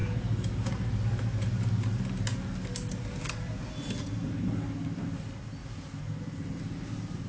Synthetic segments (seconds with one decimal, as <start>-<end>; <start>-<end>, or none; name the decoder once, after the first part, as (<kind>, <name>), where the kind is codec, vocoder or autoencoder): none